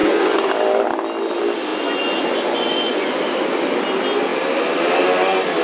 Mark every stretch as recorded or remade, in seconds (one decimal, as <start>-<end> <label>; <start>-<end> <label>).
0.0-0.5 remade; 0.5-1.7 recorded; 1.7-3.3 remade; 3.3-5.6 recorded